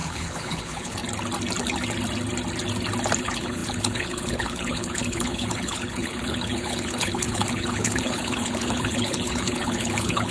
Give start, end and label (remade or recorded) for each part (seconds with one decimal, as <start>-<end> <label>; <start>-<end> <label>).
0.0-1.0 remade; 1.0-3.2 recorded; 3.2-10.3 remade